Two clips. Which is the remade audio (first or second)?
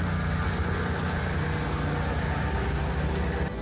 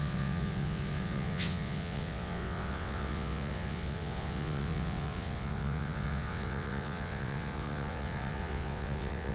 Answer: second